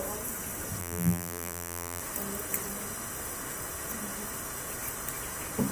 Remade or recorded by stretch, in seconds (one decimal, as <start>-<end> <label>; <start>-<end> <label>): 0.0-0.8 recorded; 0.8-2.0 remade; 2.0-5.7 recorded